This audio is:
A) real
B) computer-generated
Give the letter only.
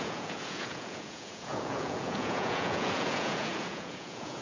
B